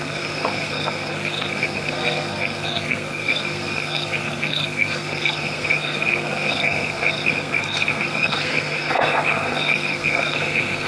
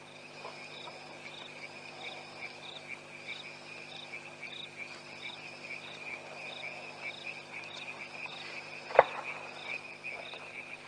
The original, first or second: second